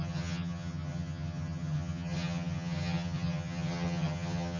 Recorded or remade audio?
remade